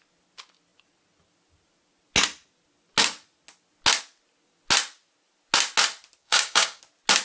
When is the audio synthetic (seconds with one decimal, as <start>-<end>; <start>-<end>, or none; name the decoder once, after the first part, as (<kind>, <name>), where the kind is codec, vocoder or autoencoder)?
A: 6.2-6.8 (codec, DAC)